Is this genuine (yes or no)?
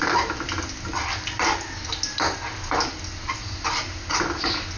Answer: yes